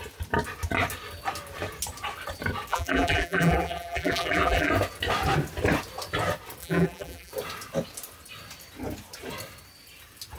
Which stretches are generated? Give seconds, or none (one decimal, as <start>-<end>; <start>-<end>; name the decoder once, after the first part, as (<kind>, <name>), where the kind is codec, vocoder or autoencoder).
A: 2.7-4.7 (vocoder, BigVGAN v2); 6.6-7.3